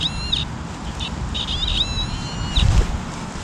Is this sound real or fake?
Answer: real